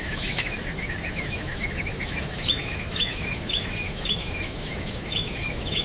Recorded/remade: remade